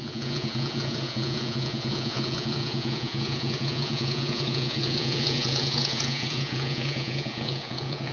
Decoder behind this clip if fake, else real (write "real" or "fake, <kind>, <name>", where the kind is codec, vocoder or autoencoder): fake, vocoder, Vocos